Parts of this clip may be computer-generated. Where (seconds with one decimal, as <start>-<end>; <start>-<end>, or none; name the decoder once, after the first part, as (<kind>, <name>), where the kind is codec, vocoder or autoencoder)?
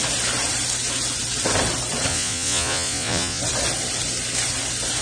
2.1-3.4 (vocoder, Vocos)